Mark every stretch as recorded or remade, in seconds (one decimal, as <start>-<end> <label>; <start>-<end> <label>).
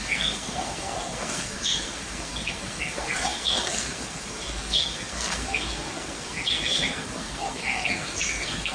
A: 0.0-8.7 remade